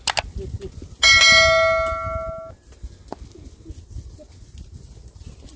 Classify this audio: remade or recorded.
recorded